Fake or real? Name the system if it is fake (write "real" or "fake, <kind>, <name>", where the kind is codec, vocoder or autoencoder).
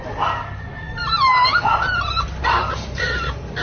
real